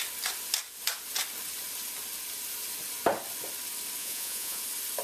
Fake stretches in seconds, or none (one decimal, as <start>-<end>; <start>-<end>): 4.0-4.6